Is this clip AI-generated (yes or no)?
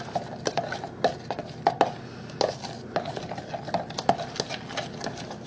no